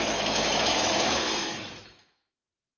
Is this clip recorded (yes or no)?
no